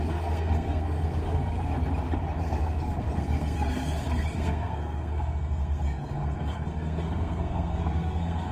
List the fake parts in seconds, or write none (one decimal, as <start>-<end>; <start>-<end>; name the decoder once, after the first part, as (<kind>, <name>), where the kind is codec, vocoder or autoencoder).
0.0-1.7 (codec, SNAC); 2.4-8.5